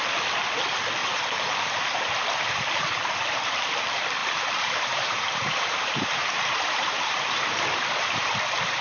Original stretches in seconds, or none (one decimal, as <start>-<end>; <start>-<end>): 0.0-1.0; 2.1-4.2; 8.3-8.8